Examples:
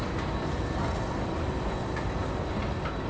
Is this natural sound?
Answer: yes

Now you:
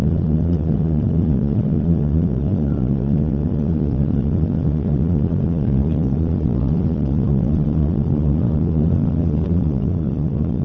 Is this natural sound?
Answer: no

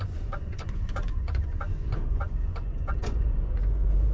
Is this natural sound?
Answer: no